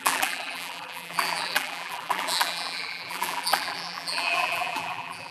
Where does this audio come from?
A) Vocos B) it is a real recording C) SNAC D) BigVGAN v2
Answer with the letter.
D